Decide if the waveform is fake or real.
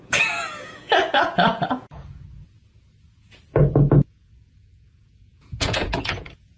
fake